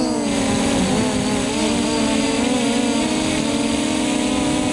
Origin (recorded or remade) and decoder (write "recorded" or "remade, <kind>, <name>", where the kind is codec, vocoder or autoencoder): recorded